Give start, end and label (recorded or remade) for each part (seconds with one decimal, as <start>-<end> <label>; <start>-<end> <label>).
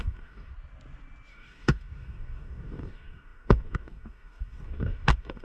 0.0-0.5 remade; 0.5-1.3 recorded; 1.3-5.4 remade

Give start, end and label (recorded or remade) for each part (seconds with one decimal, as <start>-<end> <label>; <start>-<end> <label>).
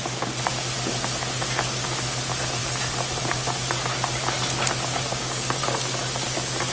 0.0-5.1 recorded; 5.1-5.6 remade; 5.6-6.7 recorded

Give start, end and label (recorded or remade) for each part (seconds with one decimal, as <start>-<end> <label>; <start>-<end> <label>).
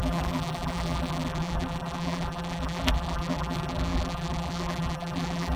0.0-5.6 remade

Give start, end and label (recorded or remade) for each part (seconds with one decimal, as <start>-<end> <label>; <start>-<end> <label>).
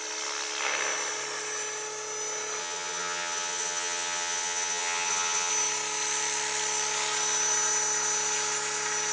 0.0-2.6 recorded; 2.6-5.5 remade; 5.5-9.1 recorded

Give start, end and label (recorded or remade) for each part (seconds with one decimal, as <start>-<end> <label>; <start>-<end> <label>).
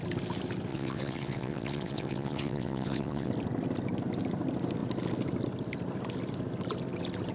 0.0-0.7 recorded; 0.7-3.3 remade; 3.3-7.3 recorded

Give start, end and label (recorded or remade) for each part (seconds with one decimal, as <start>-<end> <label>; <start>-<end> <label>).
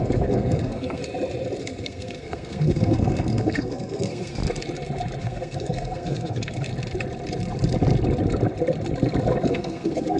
0.0-1.0 remade; 1.0-1.6 recorded; 1.6-4.4 remade; 4.4-5.2 recorded; 5.2-6.7 remade; 6.7-9.5 recorded; 9.5-10.2 remade